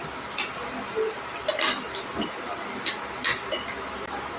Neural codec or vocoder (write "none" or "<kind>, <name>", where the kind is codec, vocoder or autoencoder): none